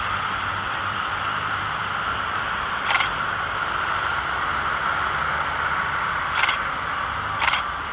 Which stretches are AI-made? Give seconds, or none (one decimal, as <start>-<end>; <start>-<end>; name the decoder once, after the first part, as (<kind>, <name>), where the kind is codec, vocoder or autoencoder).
0.5-3.3 (vocoder, BigVGAN v2)